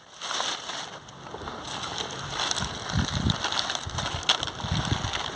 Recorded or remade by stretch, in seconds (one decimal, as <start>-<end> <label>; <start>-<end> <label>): 0.0-5.4 recorded